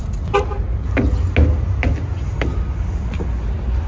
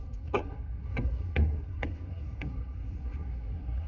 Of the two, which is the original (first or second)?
first